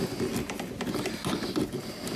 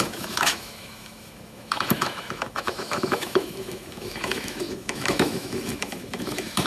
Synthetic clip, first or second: second